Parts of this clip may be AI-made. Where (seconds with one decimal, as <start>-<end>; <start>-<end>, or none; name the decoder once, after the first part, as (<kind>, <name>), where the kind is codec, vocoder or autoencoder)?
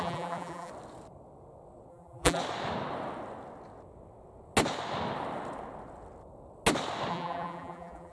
0.0-0.7 (vocoder, BigVGAN v2); 1.9-2.4; 7.1-8.1